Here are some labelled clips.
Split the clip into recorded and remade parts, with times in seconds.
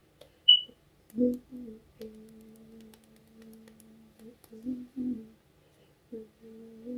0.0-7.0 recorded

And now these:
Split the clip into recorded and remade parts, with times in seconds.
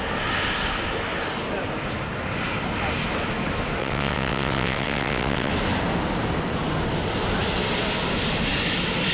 0.0-3.8 recorded; 3.8-5.5 remade; 5.5-9.1 recorded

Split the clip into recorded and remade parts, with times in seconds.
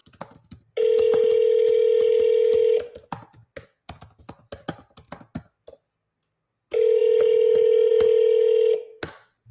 0.0-9.5 recorded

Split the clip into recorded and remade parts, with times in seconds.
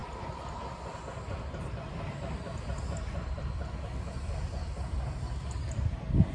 0.0-6.3 recorded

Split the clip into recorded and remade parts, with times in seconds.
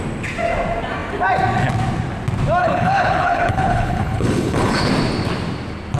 0.0-2.6 recorded; 2.6-4.9 remade; 4.9-6.0 recorded